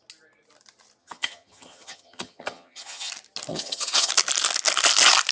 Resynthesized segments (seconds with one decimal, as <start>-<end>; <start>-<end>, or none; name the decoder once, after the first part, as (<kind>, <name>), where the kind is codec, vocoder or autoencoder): 1.0-3.1 (vocoder, HiFi-GAN); 3.5-4.1